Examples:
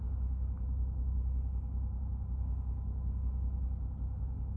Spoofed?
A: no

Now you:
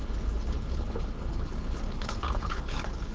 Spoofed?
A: yes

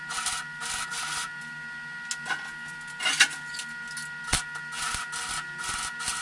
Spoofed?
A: no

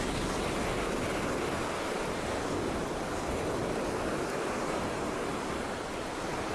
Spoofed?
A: no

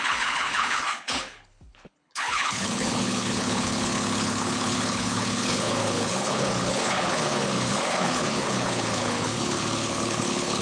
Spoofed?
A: yes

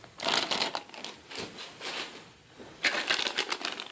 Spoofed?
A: no